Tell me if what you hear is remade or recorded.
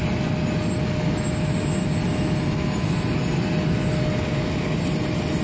recorded